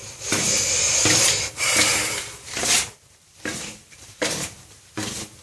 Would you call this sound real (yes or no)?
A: no